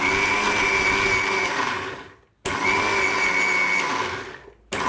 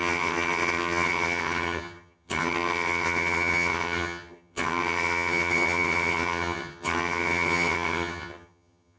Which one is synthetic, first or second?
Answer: second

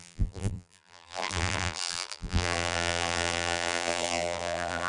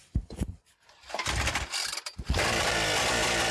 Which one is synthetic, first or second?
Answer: first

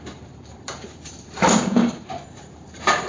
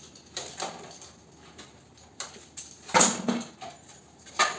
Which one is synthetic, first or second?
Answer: first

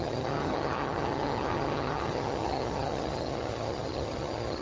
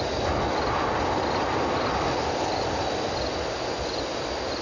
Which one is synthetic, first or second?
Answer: first